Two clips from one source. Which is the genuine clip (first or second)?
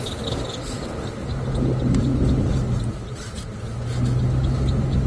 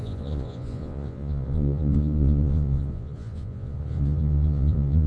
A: first